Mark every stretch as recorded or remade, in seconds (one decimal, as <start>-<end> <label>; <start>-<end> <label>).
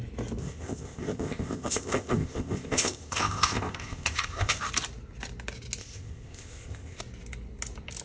0.0-0.4 recorded; 0.4-4.6 remade; 4.6-5.8 recorded; 5.8-7.0 remade; 7.0-8.0 recorded